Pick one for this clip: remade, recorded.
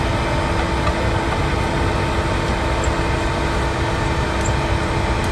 recorded